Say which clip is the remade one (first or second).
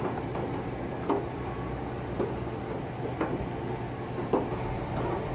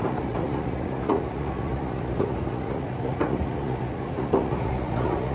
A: second